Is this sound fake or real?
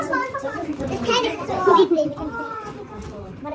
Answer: fake